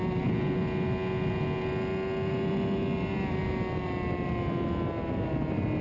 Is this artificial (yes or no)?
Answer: no